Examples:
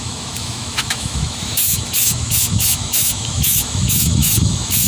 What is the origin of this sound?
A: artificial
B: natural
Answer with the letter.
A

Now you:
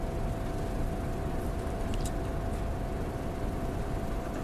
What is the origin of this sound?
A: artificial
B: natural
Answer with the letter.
B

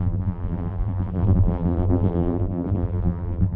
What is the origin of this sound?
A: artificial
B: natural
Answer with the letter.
A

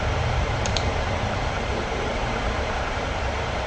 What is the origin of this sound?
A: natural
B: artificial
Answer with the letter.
B